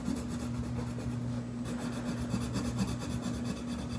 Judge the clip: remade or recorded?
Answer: recorded